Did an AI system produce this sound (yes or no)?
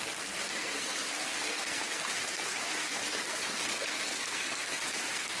yes